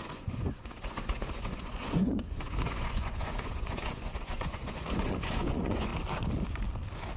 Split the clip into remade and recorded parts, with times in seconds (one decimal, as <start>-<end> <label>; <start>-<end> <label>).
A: 0.0-5.9 remade; 5.9-7.2 recorded